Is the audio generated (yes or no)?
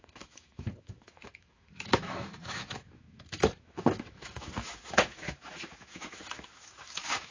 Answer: yes